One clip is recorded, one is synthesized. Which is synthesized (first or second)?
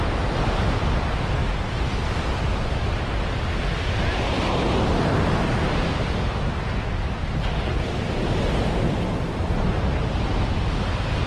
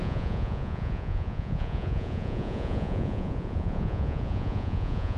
second